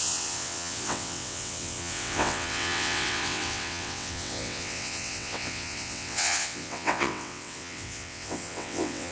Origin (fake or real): fake